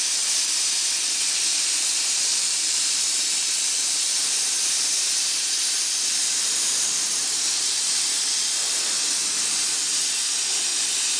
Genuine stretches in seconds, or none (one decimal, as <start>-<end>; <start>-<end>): 0.0-2.3; 4.3-6.2; 7.8-11.2